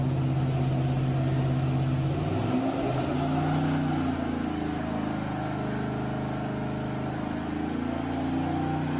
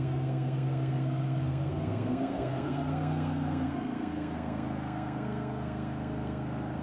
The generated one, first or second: second